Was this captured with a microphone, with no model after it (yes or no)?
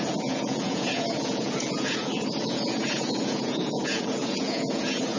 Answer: no